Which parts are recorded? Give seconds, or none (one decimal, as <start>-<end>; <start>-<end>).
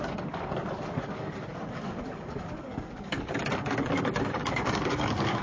none